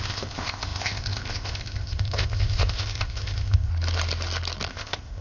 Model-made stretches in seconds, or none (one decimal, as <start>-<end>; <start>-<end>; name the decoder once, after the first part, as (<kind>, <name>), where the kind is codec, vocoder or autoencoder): 0.0-3.7 (codec, ZipCodec); 4.7-5.2